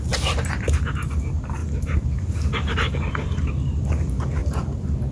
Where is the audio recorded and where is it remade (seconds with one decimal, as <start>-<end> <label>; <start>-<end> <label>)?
0.0-1.6 recorded; 1.6-3.7 remade; 3.7-4.4 recorded; 4.4-5.1 remade